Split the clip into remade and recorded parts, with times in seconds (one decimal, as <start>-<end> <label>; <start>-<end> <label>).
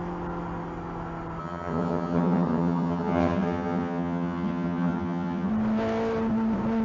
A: 0.0-1.4 recorded; 1.4-5.5 remade; 5.5-6.8 recorded